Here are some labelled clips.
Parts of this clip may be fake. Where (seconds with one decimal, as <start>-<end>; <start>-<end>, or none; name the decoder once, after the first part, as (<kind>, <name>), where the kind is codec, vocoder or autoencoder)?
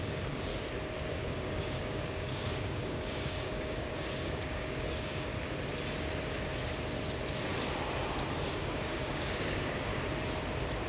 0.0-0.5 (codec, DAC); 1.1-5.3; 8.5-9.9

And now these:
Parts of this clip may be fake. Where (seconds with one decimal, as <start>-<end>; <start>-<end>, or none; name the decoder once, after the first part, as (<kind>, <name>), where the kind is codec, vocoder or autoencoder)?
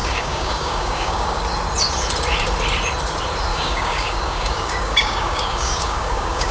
0.0-1.4 (codec, DAC); 3.5-6.5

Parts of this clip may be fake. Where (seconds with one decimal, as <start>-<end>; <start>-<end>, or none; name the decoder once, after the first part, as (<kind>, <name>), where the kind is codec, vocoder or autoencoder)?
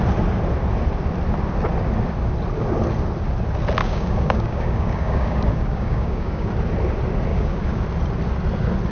3.8-6.5 (codec, DAC); 7.3-7.8